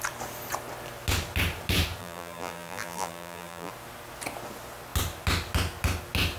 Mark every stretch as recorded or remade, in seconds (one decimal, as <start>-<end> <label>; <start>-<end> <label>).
0.0-2.0 recorded; 2.0-3.7 remade; 3.7-6.4 recorded